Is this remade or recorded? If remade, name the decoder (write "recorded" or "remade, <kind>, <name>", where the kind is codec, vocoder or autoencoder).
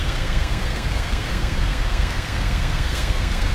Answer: remade, codec, SNAC